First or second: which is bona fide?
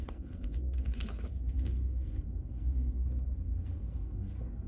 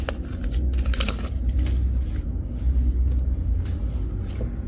second